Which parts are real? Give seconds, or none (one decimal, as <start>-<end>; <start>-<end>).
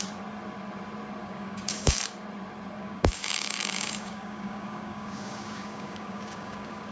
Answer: 0.0-1.2; 2.0-2.8